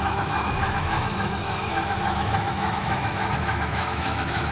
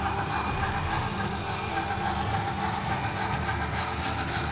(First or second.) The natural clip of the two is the second